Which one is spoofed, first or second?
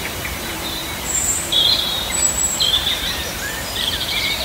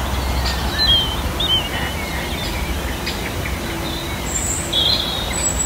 first